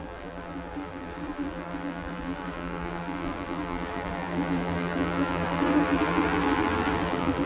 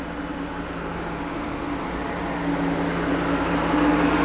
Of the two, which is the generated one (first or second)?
first